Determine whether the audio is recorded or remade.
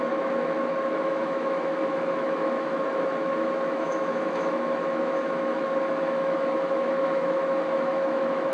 remade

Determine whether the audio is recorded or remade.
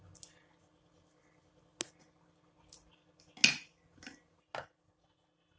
recorded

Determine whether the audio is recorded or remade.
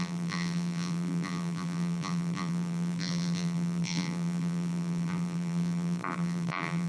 remade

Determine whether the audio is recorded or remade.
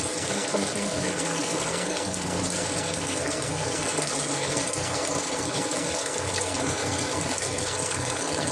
remade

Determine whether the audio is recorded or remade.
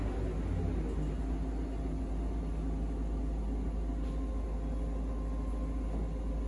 recorded